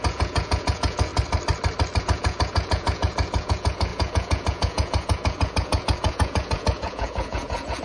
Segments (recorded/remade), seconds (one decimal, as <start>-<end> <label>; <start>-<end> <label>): 0.0-1.1 remade; 1.1-2.0 recorded; 2.0-7.8 remade

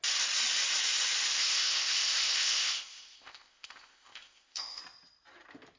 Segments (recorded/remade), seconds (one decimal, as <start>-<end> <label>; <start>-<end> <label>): 0.0-1.3 recorded; 1.3-4.8 remade; 4.8-5.8 recorded

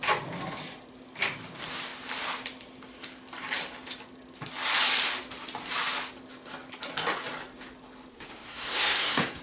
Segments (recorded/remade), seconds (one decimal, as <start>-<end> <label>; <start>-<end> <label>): 0.0-8.1 recorded; 8.1-9.4 remade